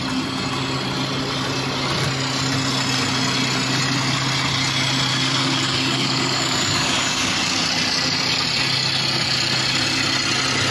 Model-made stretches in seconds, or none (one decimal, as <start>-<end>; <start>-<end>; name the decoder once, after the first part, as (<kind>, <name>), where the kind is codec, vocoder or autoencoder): 5.1-7.7 (codec, DAC)